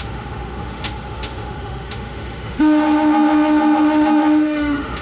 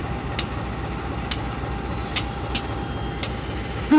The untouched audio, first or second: second